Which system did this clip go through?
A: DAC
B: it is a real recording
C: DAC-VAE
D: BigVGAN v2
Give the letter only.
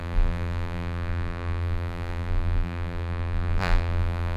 D